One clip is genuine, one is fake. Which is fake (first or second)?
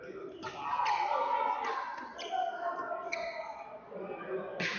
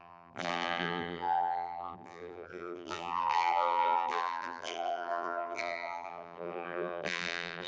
second